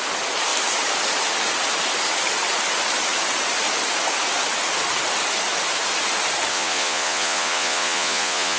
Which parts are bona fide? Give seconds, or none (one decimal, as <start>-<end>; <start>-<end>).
0.0-6.5